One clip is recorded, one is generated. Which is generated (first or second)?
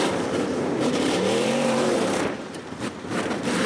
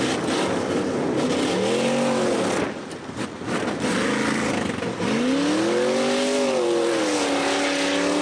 first